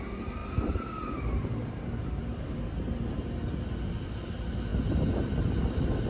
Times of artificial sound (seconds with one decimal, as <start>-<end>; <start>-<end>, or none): none